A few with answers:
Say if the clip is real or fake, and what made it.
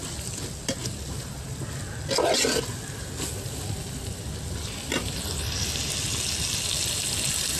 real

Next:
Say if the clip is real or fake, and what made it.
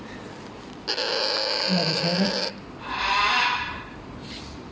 real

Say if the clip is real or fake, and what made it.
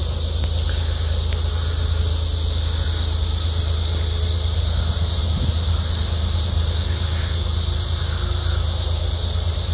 real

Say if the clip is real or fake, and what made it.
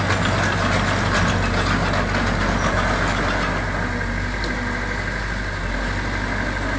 real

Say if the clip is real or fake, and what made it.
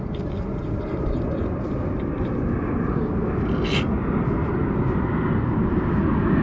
real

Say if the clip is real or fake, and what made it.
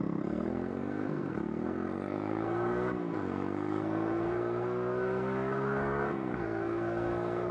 fake, codec, SNAC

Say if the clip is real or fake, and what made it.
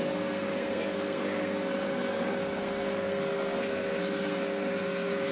fake, codec, SNAC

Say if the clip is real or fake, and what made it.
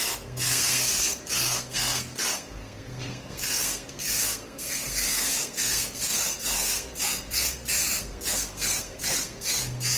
fake, codec, SNAC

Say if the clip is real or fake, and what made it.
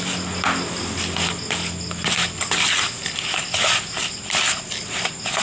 real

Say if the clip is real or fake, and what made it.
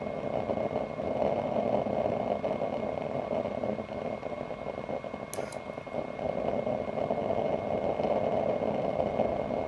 real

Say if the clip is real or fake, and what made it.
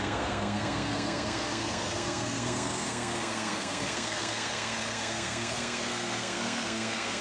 fake, codec, SNAC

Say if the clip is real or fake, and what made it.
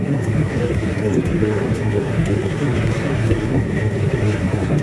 fake, codec, SNAC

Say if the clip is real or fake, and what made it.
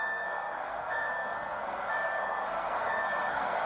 fake, codec, SNAC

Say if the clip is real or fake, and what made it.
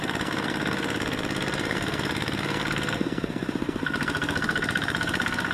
fake, codec, SNAC